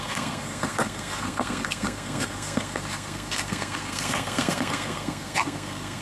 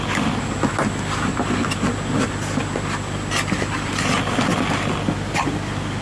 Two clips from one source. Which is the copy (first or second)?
first